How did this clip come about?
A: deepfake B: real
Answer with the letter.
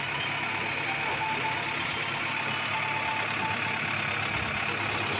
B